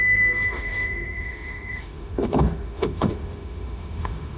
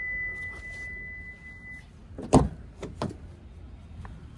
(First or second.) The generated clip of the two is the first